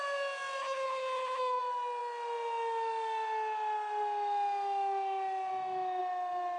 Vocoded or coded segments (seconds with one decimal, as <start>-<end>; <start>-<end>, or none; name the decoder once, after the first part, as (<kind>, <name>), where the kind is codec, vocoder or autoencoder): 0.6-1.6 (codec, HILCodec)